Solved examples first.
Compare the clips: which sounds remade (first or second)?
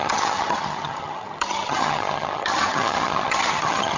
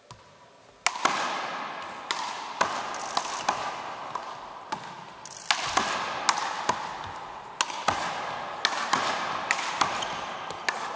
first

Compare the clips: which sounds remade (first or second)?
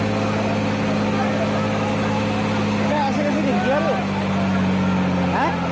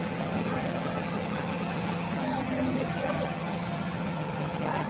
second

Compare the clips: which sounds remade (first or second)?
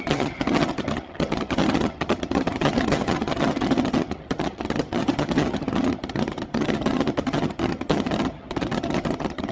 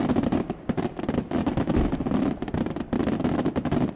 first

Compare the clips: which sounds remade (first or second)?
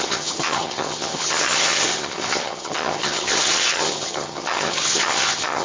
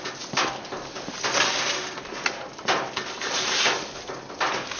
first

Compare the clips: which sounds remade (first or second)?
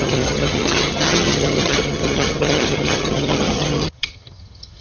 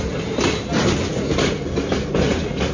first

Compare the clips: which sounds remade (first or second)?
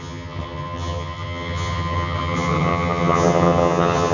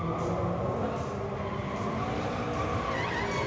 first